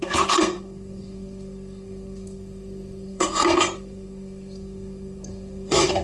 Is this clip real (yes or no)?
no